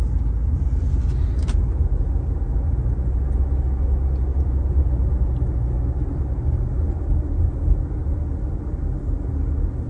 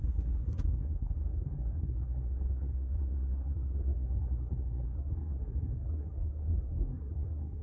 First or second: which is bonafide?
first